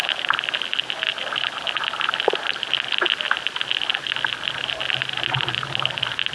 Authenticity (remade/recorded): recorded